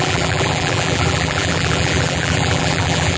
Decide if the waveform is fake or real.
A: fake